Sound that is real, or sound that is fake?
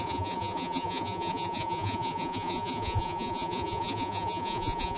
fake